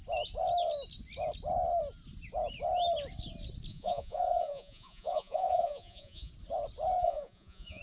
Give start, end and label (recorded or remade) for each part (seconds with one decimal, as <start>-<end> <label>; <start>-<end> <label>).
0.0-3.7 recorded; 3.7-6.3 remade; 6.3-7.0 recorded; 7.0-7.8 remade